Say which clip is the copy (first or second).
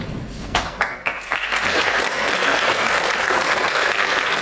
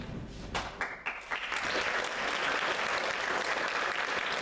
first